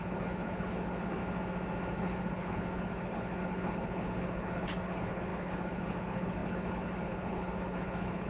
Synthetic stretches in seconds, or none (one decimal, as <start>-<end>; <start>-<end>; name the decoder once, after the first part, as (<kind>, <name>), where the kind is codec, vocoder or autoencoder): 0.0-1.2 (codec, HILCodec); 1.9-8.3